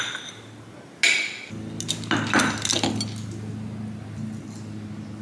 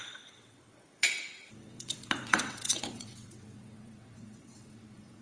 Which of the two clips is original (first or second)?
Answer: first